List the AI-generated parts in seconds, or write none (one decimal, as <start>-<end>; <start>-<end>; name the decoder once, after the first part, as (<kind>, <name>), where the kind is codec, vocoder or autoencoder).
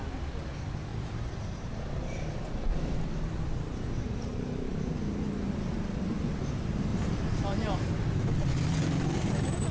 0.9-4.9 (vocoder, BigVGAN v2); 6.9-8.5